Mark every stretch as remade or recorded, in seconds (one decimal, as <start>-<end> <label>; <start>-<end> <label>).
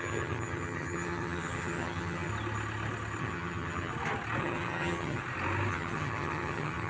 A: 0.0-2.3 remade; 2.3-3.2 recorded; 3.2-3.9 remade; 3.9-4.4 recorded; 4.4-5.2 remade; 5.2-5.7 recorded; 5.7-6.9 remade